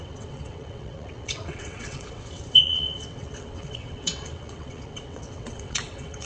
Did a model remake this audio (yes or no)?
yes